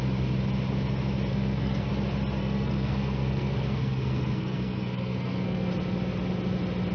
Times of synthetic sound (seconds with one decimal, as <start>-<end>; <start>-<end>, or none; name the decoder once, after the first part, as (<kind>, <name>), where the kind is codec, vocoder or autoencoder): 1.3-1.9 (codec, SNAC); 2.4-5.7